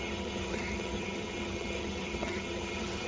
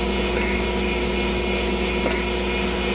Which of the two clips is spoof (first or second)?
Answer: first